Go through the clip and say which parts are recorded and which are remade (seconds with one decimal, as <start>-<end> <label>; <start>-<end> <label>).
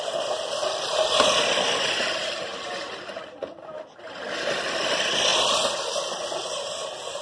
0.0-7.2 recorded